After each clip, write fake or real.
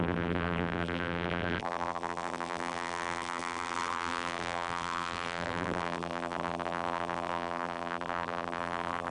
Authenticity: fake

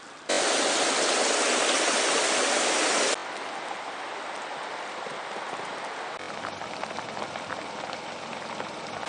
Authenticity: real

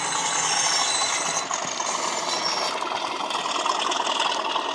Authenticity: real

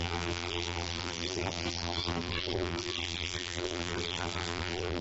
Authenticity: fake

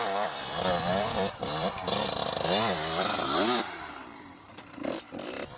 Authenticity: fake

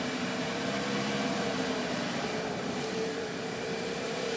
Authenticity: fake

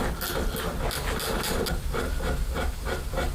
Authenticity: real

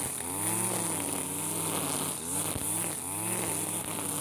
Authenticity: real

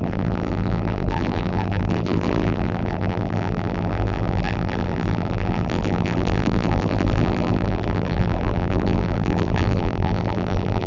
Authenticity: fake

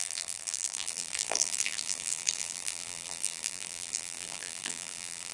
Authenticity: fake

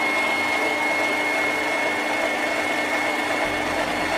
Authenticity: real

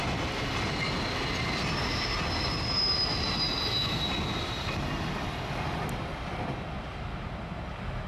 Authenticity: real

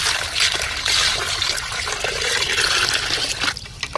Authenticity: real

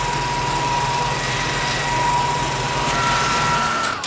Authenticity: fake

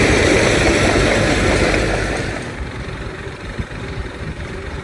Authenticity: fake